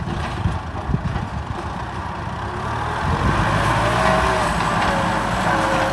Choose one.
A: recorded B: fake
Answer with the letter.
A